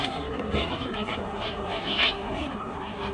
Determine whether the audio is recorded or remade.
remade